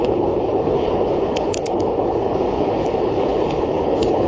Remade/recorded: remade